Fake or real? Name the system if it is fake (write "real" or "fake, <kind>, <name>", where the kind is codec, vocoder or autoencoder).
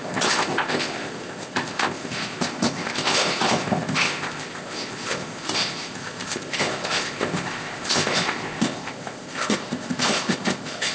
fake, codec, ZipCodec